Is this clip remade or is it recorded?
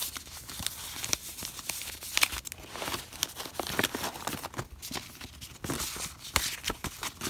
recorded